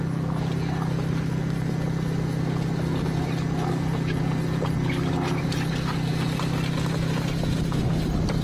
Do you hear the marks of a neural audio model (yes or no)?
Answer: no